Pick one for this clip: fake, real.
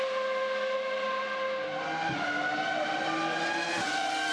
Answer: real